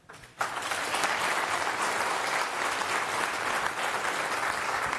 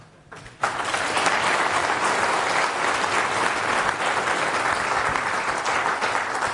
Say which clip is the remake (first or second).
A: first